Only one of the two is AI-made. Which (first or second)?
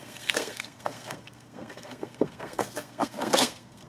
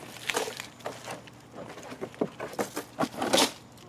first